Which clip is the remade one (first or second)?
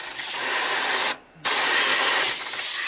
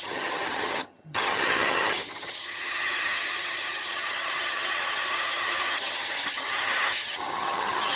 second